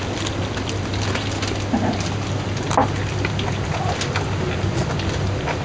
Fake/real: real